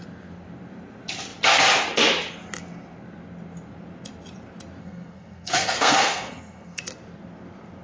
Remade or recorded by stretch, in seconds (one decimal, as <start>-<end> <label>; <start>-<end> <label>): 0.0-4.8 recorded; 4.8-6.8 remade; 6.8-7.8 recorded